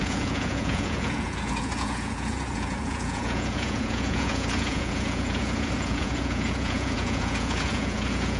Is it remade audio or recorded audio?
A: remade